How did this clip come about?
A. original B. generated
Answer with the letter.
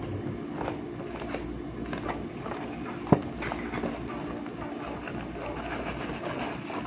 A